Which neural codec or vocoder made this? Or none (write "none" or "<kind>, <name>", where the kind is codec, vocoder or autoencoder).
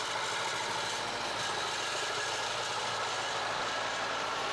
none